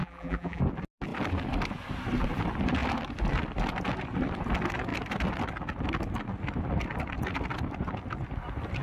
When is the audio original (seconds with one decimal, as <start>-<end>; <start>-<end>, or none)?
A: 0.6-8.8